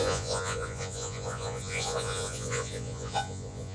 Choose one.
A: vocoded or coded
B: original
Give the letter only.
A